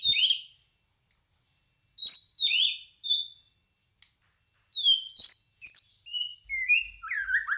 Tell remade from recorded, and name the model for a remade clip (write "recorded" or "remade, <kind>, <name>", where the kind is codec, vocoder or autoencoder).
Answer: recorded